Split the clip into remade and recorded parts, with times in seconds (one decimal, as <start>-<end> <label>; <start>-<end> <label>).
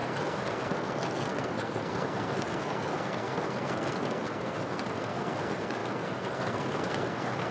0.0-7.5 remade